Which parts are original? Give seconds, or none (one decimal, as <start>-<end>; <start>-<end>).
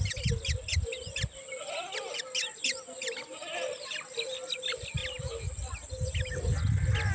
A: 0.0-7.1